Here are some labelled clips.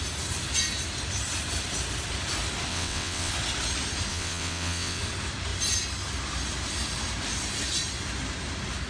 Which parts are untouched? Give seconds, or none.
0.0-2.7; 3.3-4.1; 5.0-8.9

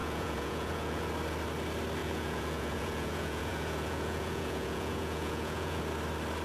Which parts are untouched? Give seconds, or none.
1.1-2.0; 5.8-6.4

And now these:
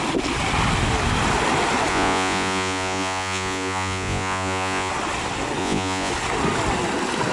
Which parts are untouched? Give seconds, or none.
0.0-1.9; 4.9-5.6; 6.1-7.3